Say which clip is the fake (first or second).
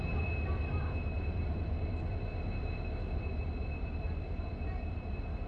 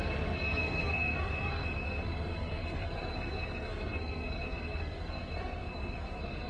second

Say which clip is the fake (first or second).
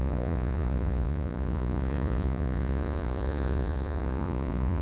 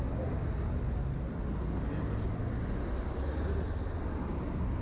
first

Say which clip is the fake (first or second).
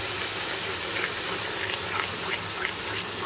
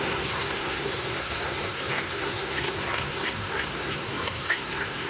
second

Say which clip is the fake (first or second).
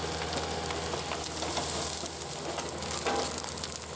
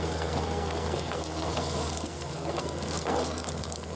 second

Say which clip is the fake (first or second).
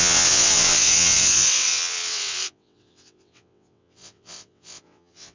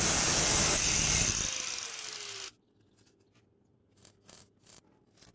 first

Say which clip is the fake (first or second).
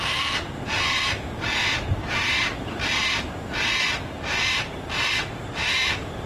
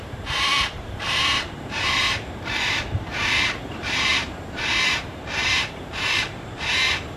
second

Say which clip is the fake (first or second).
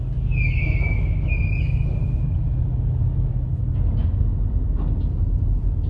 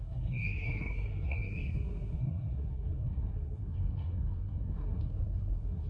second